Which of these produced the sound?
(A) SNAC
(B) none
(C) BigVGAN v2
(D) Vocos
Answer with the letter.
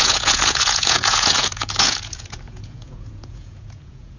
D